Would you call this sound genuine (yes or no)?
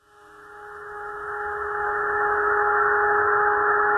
no